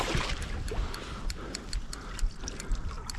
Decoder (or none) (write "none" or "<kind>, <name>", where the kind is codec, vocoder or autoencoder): none